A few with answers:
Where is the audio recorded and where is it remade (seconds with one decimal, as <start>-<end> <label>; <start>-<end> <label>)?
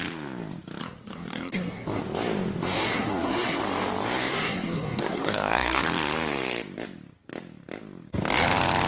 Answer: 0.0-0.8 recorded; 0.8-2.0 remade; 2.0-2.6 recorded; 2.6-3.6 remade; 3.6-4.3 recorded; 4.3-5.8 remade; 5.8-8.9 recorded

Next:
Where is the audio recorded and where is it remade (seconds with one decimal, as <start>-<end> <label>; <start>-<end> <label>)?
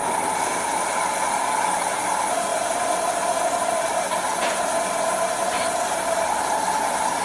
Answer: 0.0-7.2 recorded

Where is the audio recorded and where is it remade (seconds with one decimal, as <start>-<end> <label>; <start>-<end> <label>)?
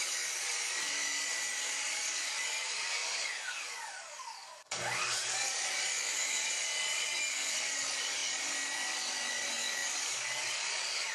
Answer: 0.0-11.1 remade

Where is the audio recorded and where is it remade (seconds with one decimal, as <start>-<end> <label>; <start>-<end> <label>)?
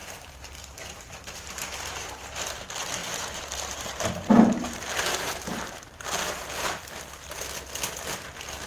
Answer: 0.0-1.6 remade; 1.6-3.0 recorded; 3.0-6.4 remade; 6.4-8.7 recorded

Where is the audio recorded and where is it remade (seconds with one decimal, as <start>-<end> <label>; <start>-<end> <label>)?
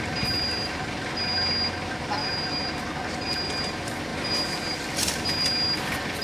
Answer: 0.0-6.2 recorded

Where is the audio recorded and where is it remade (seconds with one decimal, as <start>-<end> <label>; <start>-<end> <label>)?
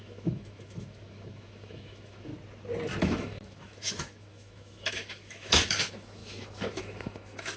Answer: 0.0-2.3 remade; 2.3-3.0 recorded; 3.0-7.6 remade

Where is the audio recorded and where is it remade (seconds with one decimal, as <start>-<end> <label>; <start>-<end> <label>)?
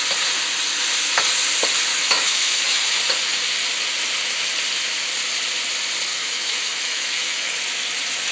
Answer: 0.0-1.9 recorded; 1.9-3.0 remade; 3.0-6.1 recorded; 6.1-7.6 remade; 7.6-8.3 recorded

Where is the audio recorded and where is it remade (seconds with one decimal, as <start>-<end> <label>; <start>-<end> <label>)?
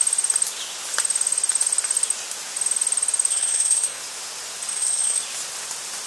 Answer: 0.0-3.3 recorded; 3.3-4.0 remade; 4.0-4.7 recorded; 4.7-5.2 remade; 5.2-6.1 recorded